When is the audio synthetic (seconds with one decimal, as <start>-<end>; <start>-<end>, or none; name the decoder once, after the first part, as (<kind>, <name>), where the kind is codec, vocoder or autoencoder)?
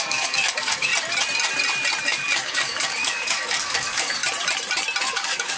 0.0-0.9 (codec, DAC); 2.0-4.2; 5.1-5.6